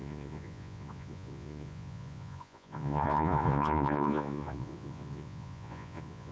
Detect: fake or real fake